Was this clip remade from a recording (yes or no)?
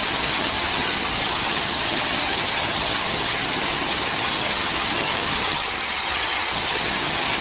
yes